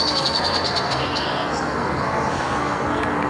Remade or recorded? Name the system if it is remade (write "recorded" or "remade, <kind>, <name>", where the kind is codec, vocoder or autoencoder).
remade, codec, SNAC